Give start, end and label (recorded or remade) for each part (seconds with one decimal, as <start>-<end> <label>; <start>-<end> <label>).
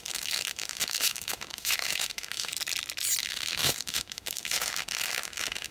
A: 0.0-2.5 remade; 2.5-3.2 recorded; 3.2-5.7 remade